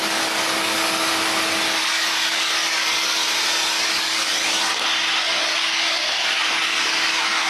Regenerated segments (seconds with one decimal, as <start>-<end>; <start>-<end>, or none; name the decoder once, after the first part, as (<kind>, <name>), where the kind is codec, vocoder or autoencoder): 0.0-1.1 (codec, DAC); 1.8-3.2; 3.9-4.3; 5.2-7.5